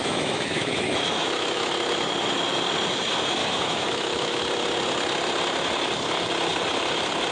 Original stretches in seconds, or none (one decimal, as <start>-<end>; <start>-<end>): 1.7-3.4; 4.4-7.3